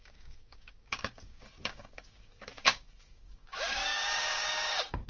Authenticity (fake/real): fake